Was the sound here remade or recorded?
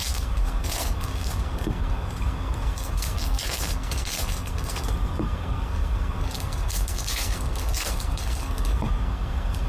remade